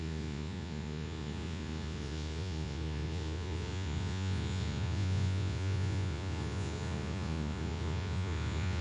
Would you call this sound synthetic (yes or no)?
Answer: yes